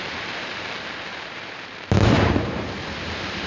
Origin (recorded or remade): remade